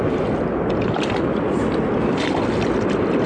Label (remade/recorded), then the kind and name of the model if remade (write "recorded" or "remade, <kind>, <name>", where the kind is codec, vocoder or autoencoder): recorded